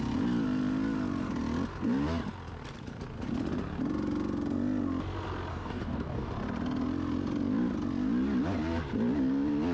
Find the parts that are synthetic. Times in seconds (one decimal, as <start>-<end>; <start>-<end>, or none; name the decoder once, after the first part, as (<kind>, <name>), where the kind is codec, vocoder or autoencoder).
5.5-6.3 (codec, DAC)